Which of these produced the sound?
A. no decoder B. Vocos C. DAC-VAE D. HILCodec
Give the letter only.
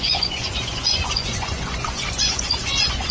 B